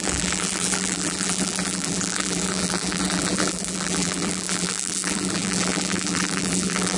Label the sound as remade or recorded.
remade